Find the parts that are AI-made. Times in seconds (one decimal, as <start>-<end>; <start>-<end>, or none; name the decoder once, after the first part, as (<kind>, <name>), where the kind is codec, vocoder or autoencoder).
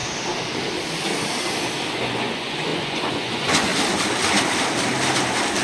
1.9-3.7 (vocoder, Vocos)